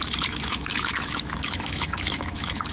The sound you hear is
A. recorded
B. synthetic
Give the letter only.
B